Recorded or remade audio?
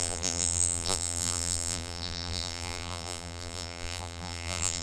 remade